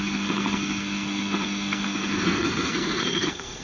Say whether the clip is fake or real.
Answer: fake